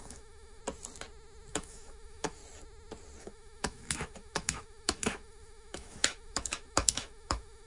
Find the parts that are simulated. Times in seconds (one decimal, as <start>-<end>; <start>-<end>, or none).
0.0-0.6; 1.5-2.4; 3.2-7.7